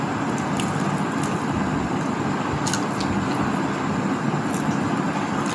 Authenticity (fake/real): real